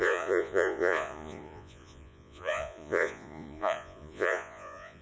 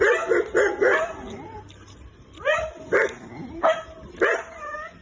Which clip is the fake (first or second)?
first